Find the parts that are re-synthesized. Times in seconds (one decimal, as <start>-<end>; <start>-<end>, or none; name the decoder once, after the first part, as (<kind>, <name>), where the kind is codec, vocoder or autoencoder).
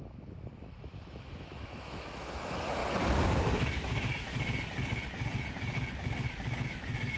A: 0.0-2.8 (autoencoder, DAC-VAE); 3.4-4.3; 6.3-7.2